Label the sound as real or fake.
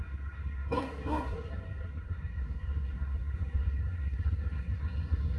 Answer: fake